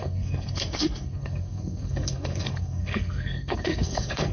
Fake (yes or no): yes